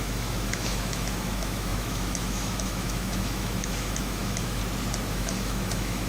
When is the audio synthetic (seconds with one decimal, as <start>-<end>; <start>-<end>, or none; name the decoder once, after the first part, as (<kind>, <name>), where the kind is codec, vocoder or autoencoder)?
0.0-4.6 (autoencoder, DAC-VAE); 5.1-6.1